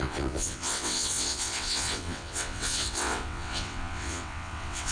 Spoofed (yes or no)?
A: yes